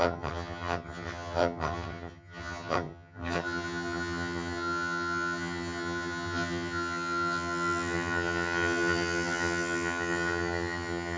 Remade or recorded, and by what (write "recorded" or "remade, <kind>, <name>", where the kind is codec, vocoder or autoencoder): remade, vocoder, HiFi-GAN